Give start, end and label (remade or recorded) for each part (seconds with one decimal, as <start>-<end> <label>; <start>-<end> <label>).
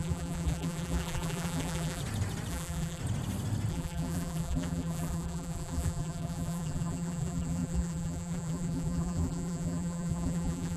0.0-2.0 remade; 2.0-2.5 recorded; 2.5-3.0 remade; 3.0-3.7 recorded; 3.7-10.8 remade